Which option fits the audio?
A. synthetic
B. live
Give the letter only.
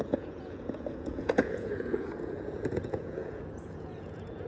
A